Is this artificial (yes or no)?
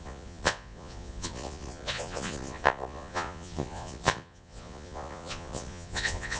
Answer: yes